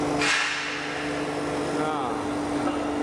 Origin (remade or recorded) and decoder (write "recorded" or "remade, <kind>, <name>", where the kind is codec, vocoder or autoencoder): recorded